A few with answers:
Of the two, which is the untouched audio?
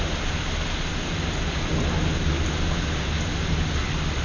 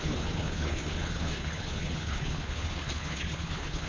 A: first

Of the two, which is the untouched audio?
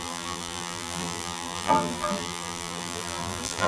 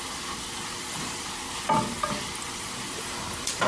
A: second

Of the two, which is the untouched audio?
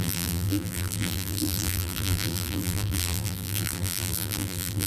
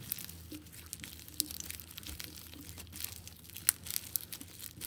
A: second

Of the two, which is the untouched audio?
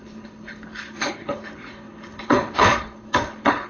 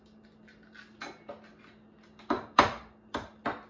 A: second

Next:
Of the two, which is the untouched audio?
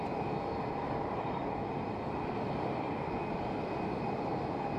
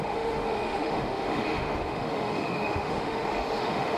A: first